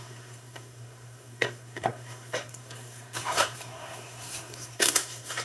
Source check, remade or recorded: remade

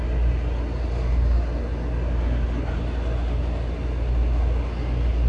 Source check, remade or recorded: recorded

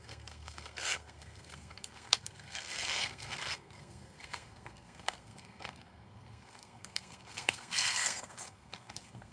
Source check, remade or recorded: remade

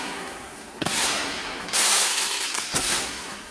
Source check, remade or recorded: remade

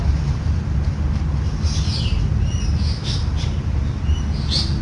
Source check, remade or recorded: recorded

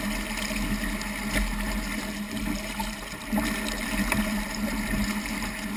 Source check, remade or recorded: recorded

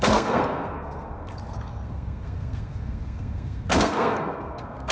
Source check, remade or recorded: remade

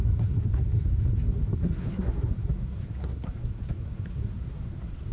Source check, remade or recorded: remade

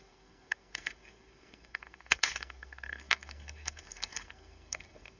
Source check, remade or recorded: remade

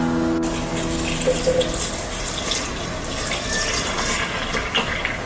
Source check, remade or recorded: recorded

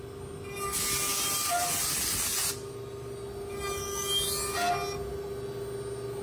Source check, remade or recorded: recorded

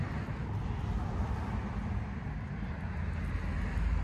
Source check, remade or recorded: recorded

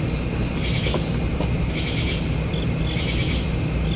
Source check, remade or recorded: recorded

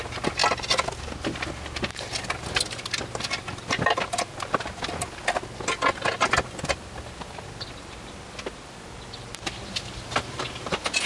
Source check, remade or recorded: recorded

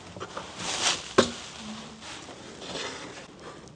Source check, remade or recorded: recorded